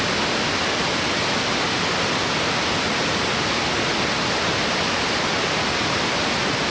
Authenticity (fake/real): real